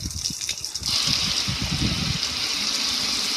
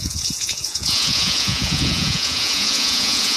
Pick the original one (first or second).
first